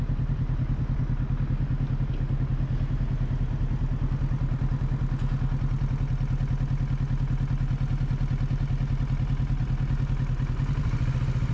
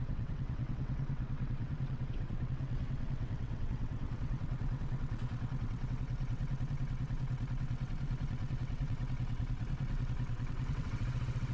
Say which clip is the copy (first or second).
second